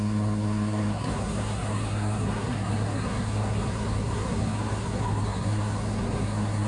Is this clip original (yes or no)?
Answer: no